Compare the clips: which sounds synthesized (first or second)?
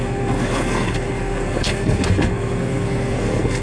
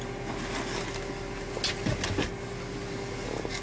first